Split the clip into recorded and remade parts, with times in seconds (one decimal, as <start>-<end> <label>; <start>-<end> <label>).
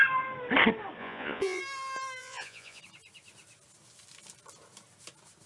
0.0-1.0 recorded; 1.0-1.6 remade; 1.6-2.2 recorded; 2.2-2.8 remade; 2.8-5.5 recorded